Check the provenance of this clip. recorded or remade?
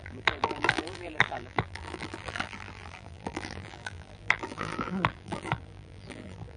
remade